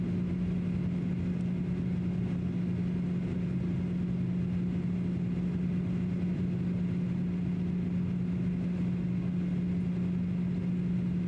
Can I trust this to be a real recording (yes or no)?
yes